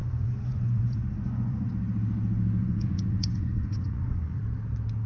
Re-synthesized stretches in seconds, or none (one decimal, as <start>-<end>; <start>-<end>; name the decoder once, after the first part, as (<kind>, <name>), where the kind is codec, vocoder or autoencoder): 0.0-1.7 (vocoder, Vocos); 2.6-4.4